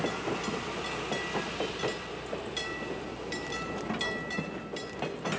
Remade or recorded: recorded